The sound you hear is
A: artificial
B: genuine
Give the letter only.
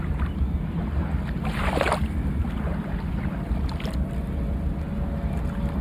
B